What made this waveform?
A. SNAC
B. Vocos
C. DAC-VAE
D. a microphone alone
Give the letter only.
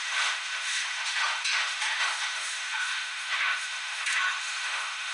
C